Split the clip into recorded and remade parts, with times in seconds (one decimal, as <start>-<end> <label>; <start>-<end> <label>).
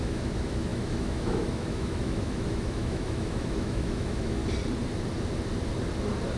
0.0-4.4 remade; 4.4-6.4 recorded